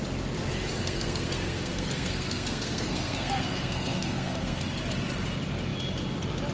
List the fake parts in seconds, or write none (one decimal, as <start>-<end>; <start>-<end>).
0.8-4.6